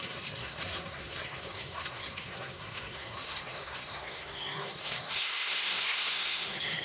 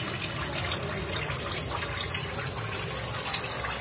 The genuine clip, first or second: second